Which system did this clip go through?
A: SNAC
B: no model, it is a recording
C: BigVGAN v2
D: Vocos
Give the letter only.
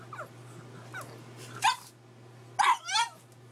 B